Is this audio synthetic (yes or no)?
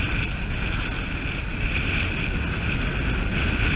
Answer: no